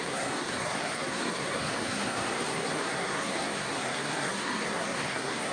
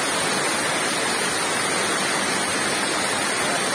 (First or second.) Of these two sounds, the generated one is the first